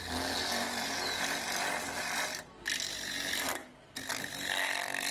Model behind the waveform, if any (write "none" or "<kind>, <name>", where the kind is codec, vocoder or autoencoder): none